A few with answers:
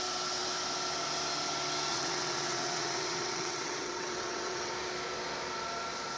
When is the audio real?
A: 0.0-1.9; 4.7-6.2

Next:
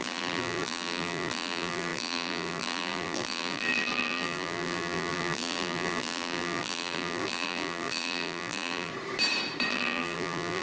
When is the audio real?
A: 8.9-9.7

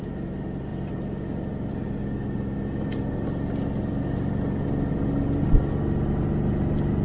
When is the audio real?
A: 0.0-7.0

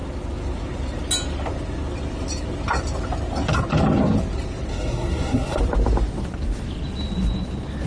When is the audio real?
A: 0.0-4.7; 5.6-7.9